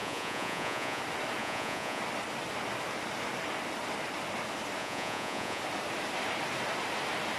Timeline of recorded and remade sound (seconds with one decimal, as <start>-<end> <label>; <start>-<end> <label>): 0.0-1.0 remade; 1.0-1.4 recorded; 1.4-2.0 remade; 2.0-4.8 recorded; 4.8-5.6 remade; 5.6-7.4 recorded